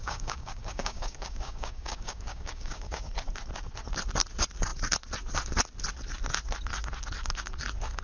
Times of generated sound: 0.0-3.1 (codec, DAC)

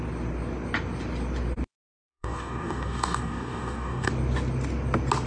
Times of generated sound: 2.0-4.1 (codec, DAC)